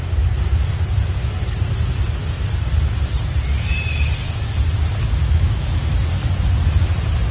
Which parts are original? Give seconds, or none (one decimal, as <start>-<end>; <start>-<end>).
0.0-5.2; 5.9-7.3